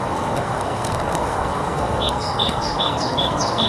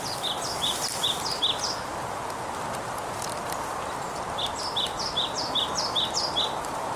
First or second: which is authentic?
second